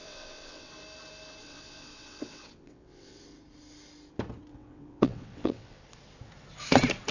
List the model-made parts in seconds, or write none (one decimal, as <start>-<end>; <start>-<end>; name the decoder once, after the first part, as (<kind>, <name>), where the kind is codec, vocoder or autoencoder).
0.0-0.7 (vocoder, WaveNeXt); 1.4-3.2; 4.5-5.8